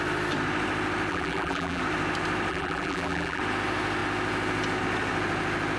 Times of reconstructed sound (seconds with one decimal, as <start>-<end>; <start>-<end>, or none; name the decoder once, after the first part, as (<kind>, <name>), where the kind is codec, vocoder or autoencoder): 1.1-1.8 (vocoder, BigVGAN v2); 2.5-3.4